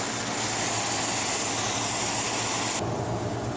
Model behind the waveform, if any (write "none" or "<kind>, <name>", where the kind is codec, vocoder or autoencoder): none